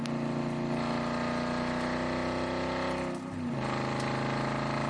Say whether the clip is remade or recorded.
recorded